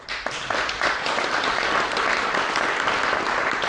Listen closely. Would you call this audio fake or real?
real